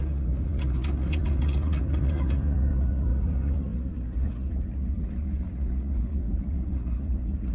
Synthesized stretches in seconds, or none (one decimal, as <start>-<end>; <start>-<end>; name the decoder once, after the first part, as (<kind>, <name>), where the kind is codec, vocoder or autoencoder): 0.0-7.5 (vocoder, Vocos)